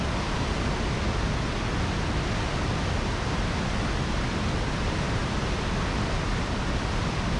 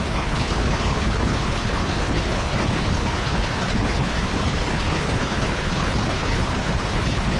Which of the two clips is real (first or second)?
first